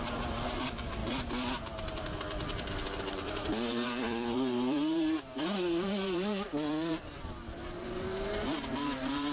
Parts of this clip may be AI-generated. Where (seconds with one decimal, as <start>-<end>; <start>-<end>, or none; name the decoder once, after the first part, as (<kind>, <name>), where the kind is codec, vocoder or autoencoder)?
0.0-1.0 (vocoder, BigVGAN v2); 3.0-9.3